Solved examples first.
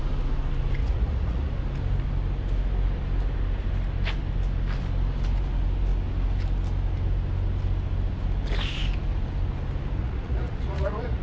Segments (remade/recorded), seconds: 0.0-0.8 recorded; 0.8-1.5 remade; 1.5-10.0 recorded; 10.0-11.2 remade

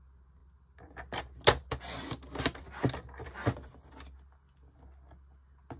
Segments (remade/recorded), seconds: 0.0-5.8 recorded

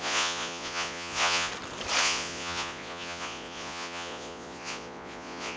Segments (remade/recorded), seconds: 0.0-1.5 remade; 1.5-2.0 recorded; 2.0-5.6 remade

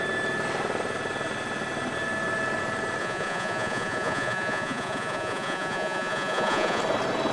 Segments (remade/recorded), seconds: 0.0-3.0 recorded; 3.0-6.8 remade; 6.8-7.3 recorded

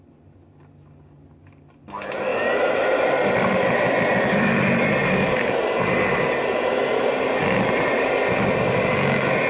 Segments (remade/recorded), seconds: 0.0-9.5 recorded

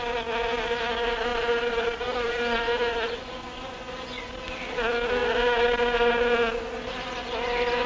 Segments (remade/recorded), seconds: 0.0-1.3 recorded; 1.3-4.3 remade; 4.3-7.9 recorded